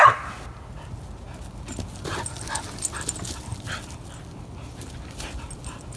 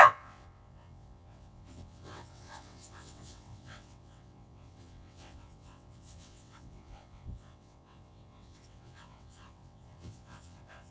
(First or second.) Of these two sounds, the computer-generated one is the second